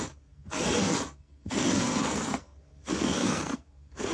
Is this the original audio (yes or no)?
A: no